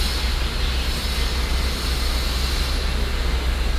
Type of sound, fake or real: real